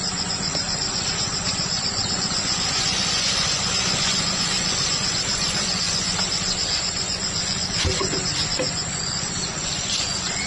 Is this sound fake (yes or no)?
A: yes